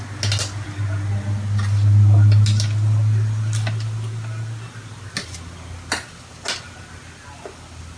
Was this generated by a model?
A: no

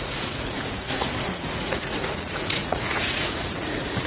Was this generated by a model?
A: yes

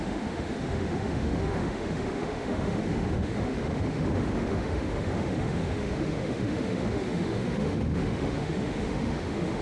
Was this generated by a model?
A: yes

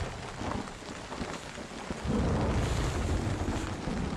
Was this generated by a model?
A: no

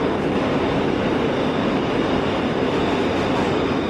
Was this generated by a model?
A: no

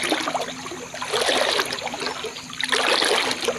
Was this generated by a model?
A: no